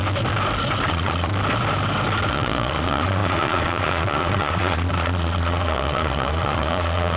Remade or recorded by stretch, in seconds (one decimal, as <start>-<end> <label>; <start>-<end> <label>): 0.0-0.9 recorded; 0.9-1.3 remade; 1.3-2.3 recorded; 2.3-7.2 remade